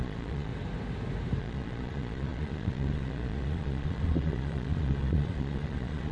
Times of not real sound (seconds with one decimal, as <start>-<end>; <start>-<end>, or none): 0.0-0.5; 1.4-6.1